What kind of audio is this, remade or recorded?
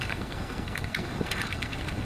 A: remade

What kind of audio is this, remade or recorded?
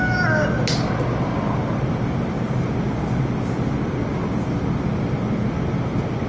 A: recorded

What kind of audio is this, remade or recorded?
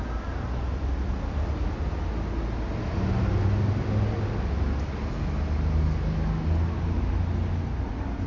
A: recorded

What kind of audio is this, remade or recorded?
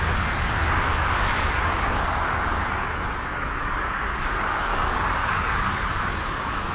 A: remade